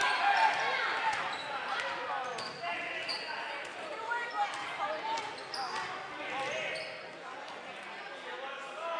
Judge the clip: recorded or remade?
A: recorded